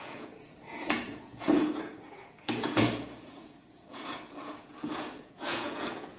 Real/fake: fake